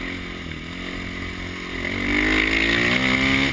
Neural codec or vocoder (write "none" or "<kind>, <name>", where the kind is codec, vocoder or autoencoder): none